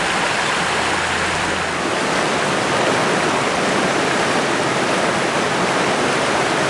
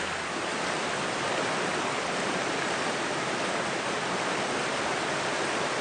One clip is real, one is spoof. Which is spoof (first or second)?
second